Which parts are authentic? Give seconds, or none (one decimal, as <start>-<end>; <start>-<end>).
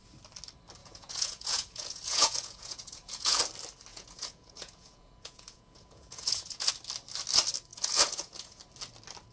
0.0-0.8; 3.4-3.9; 6.7-7.7; 8.6-9.3